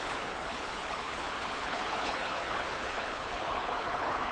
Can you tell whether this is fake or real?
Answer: fake